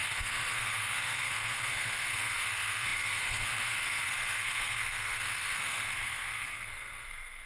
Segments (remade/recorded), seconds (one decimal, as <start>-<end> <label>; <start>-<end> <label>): 0.0-7.5 remade